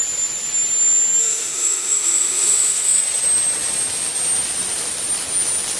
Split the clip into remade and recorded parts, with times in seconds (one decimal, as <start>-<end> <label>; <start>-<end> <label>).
0.0-1.2 recorded; 1.2-3.0 remade; 3.0-5.8 recorded